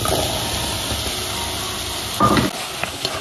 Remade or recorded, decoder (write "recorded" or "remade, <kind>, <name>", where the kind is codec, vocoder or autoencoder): recorded